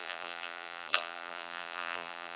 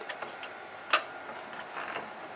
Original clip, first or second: second